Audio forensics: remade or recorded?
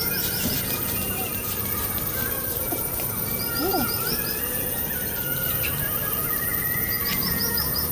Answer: remade